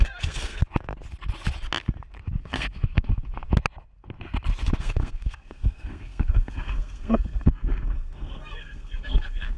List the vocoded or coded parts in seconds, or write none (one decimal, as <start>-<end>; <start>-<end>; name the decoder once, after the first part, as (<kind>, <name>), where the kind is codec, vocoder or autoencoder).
0.0-0.6 (codec, SNAC); 2.4-3.2; 4.8-9.6